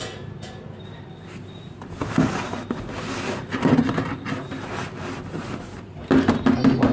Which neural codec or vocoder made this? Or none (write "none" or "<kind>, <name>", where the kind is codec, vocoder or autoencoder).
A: none